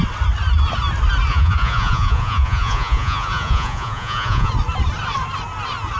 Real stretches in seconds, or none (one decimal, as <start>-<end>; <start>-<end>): 0.0-1.3; 4.5-6.0